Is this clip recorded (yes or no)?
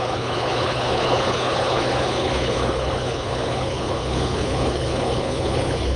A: no